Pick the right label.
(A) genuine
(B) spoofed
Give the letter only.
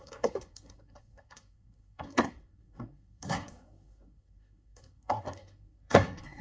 B